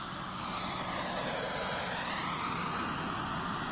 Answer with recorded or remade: recorded